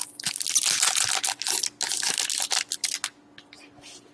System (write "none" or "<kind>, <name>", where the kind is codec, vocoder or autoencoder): none